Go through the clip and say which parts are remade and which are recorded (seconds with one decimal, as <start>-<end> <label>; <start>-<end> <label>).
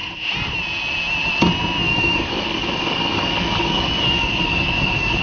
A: 0.0-1.9 recorded; 1.9-5.2 remade